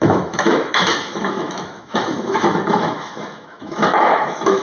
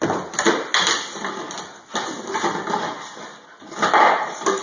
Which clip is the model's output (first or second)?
first